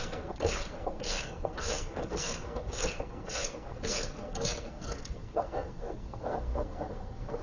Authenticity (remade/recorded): remade